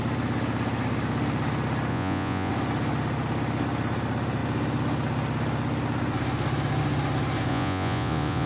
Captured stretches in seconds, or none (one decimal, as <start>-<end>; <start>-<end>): 0.0-1.9; 2.5-7.5